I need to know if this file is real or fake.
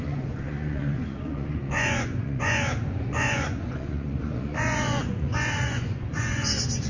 fake